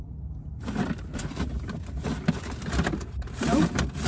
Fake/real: real